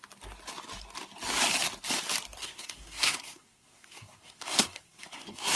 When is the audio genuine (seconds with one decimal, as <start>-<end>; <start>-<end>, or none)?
0.0-2.4